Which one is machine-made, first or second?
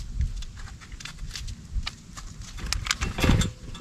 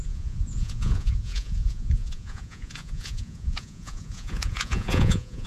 second